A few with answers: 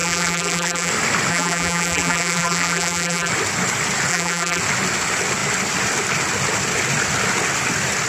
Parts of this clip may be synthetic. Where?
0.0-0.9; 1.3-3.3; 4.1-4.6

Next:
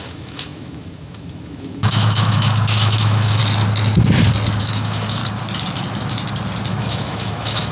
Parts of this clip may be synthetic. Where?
0.0-3.4; 4.6-5.2; 6.7-7.7

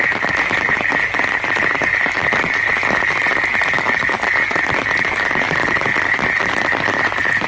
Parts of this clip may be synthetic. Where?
none

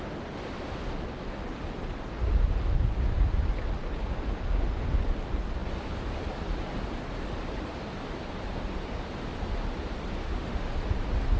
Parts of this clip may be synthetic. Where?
10.2-10.7

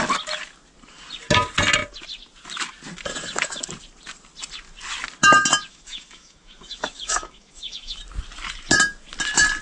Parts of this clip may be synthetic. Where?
5.7-8.0